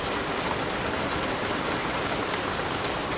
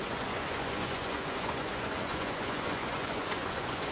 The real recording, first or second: first